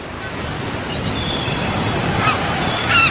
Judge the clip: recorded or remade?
recorded